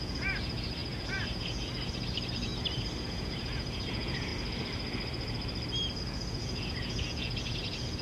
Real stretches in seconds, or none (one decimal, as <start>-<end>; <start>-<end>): 2.5-3.0; 4.3-6.0

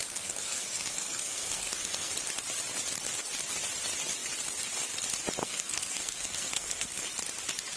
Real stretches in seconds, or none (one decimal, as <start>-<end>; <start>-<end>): 2.1-5.4; 7.0-7.8

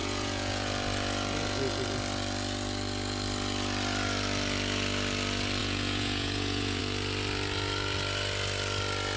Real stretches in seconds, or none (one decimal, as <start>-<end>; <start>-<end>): 0.7-5.6; 6.8-9.2

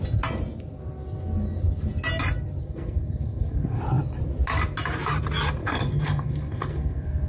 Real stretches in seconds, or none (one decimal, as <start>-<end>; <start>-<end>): 0.0-2.6; 3.8-5.6

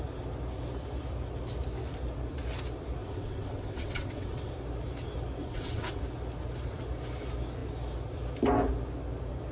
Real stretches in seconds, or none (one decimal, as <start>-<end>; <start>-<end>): 0.0-3.0; 4.5-5.4; 6.0-9.5

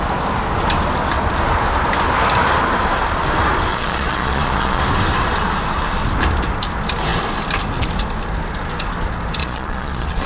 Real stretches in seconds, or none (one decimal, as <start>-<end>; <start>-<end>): 0.0-3.7; 4.8-9.4